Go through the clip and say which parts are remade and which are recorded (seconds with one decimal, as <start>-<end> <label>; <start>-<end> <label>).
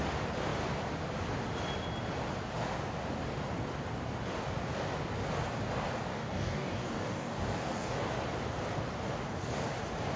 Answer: 0.0-6.1 recorded; 6.1-8.0 remade; 8.0-10.2 recorded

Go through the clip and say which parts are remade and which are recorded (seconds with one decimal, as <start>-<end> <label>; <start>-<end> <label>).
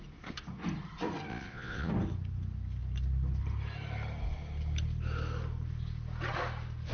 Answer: 0.0-1.3 recorded; 1.3-1.9 remade; 1.9-6.9 recorded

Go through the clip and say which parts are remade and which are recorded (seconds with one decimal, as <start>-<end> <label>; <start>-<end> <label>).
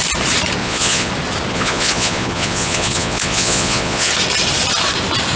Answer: 0.0-0.6 recorded; 0.6-1.1 remade; 1.1-1.5 recorded; 1.5-4.1 remade; 4.1-5.4 recorded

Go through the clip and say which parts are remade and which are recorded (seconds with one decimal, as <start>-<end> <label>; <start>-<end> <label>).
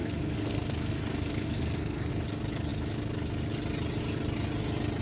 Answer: 0.0-2.1 remade; 2.1-5.0 recorded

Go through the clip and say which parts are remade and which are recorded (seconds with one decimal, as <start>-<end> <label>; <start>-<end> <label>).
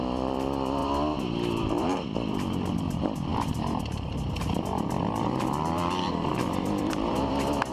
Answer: 0.0-7.7 remade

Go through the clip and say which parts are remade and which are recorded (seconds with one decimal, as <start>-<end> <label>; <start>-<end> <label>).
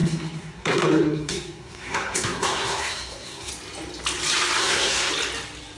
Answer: 0.0-3.5 remade; 3.5-4.6 recorded; 4.6-5.1 remade; 5.1-5.8 recorded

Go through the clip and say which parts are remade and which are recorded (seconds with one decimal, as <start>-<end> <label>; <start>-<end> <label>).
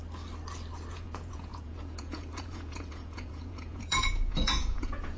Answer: 0.0-0.9 recorded; 0.9-5.2 remade